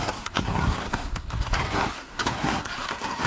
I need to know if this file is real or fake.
fake